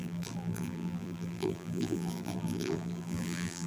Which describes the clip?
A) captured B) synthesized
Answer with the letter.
B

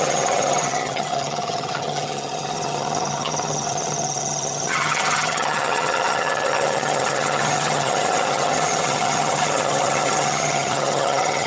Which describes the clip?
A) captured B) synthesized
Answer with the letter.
B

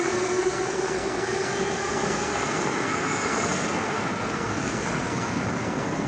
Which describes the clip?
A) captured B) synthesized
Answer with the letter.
B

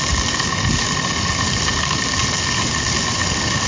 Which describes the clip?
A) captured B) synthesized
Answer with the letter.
A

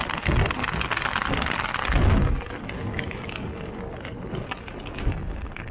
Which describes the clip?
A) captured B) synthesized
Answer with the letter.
A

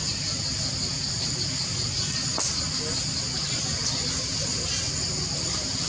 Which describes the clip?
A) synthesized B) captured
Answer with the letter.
B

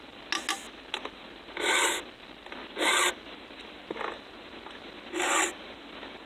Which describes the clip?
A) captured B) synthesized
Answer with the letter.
A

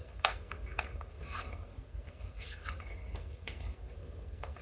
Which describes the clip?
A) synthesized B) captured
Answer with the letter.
A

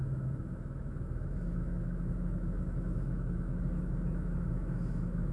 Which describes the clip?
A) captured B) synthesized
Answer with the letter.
B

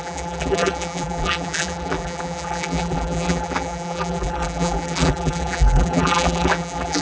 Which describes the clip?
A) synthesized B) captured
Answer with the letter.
A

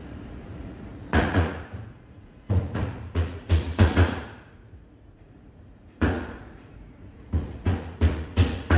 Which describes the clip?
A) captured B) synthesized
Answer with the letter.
B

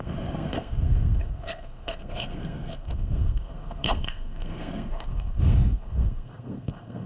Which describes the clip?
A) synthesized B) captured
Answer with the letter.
A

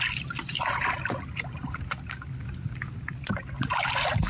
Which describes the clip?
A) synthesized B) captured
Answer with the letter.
B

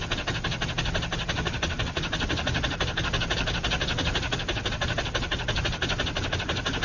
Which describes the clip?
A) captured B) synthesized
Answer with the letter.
A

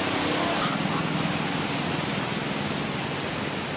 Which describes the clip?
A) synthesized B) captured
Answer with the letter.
B